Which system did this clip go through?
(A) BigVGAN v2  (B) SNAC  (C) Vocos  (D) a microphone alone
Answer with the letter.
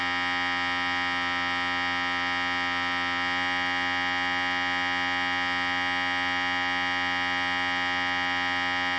D